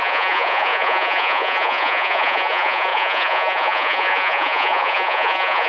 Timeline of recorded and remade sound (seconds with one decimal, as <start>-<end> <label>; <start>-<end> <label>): 0.0-5.7 remade